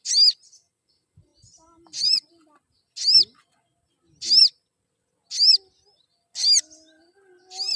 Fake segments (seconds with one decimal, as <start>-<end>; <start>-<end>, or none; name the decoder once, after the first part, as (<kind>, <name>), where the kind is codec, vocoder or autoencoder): 1.3-2.3 (vocoder, BigVGAN v2)